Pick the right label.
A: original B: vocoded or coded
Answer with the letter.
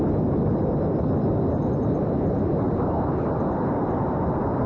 A